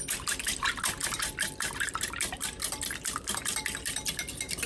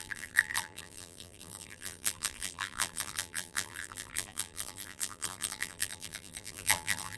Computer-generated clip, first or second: second